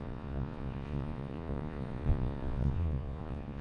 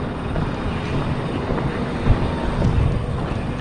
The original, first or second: second